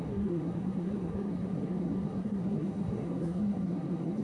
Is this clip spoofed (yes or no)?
yes